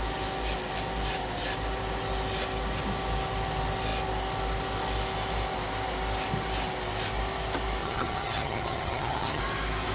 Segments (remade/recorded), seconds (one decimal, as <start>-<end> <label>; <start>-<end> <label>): 0.0-7.8 recorded; 7.8-9.4 remade; 9.4-9.9 recorded